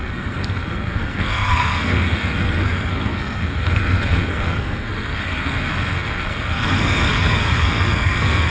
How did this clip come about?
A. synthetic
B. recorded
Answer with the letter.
A